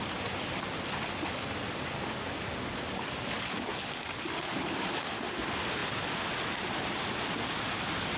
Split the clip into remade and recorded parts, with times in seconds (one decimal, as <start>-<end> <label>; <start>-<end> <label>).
0.0-8.2 recorded

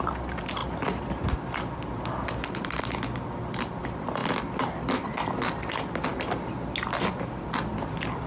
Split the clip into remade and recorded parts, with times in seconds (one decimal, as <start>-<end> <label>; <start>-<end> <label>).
0.0-8.3 recorded

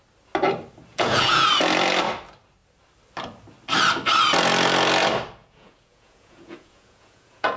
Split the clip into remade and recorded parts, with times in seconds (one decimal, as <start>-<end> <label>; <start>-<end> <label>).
0.0-0.9 recorded; 0.9-1.5 remade; 1.5-5.4 recorded; 5.4-7.6 remade

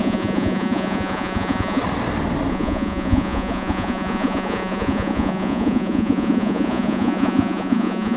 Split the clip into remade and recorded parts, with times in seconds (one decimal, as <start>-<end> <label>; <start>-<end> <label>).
0.0-1.8 remade; 1.8-2.5 recorded; 2.5-8.2 remade

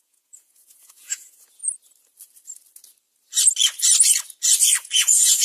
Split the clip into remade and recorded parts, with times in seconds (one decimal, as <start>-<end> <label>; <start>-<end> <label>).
0.0-1.6 remade; 1.6-4.8 recorded; 4.8-5.4 remade

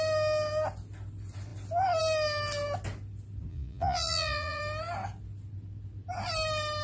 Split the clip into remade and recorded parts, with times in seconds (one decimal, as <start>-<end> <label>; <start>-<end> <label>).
0.0-3.5 recorded; 3.5-4.6 remade; 4.6-6.8 recorded

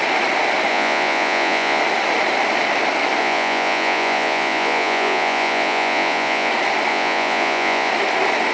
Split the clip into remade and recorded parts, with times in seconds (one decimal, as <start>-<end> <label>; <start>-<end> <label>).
0.0-0.7 recorded; 0.7-1.8 remade; 1.8-3.2 recorded; 3.2-6.5 remade; 6.5-6.9 recorded; 6.9-7.9 remade; 7.9-8.5 recorded

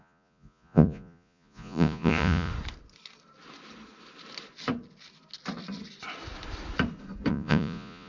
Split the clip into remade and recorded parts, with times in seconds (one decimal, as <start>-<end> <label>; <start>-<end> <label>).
0.0-2.5 remade; 2.5-7.3 recorded; 7.3-8.1 remade